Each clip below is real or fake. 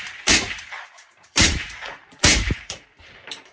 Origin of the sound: fake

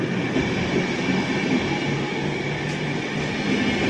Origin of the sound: real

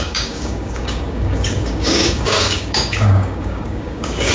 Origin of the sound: fake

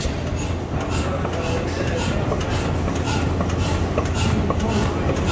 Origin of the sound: real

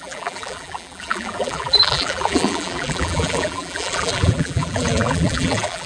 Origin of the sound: fake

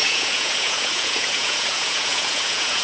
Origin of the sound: fake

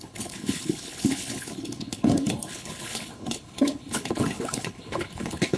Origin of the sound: fake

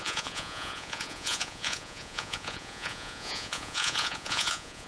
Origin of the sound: fake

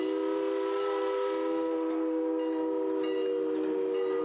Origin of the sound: real